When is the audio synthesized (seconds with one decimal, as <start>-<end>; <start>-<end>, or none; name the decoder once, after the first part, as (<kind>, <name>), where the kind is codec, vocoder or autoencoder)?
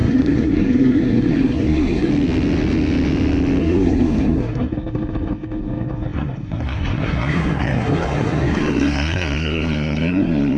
0.0-2.1 (codec, SNAC); 3.6-10.6